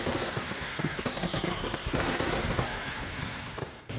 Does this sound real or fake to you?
fake